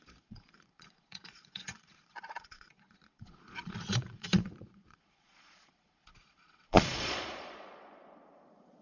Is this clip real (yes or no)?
no